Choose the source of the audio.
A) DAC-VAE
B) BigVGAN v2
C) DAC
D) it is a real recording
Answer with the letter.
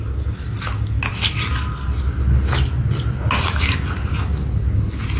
D